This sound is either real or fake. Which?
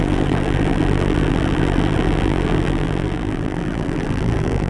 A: fake